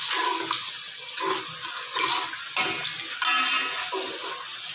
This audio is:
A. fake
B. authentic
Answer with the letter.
B